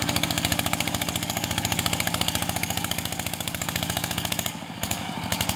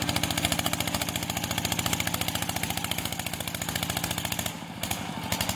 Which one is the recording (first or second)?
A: second